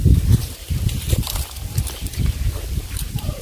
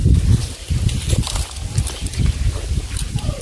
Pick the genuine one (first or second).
second